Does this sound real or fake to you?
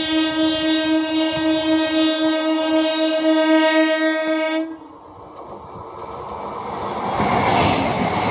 real